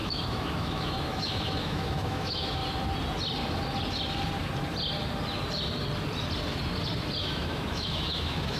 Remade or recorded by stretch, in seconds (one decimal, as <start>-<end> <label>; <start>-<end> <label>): 0.0-2.6 remade; 2.6-7.2 recorded; 7.2-8.6 remade